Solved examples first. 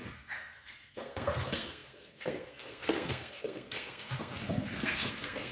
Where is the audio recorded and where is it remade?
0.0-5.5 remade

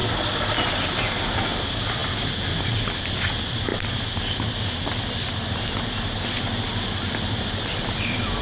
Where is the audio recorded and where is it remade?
0.0-1.3 recorded; 1.3-2.0 remade; 2.0-3.0 recorded; 3.0-3.7 remade; 3.7-7.8 recorded; 7.8-8.4 remade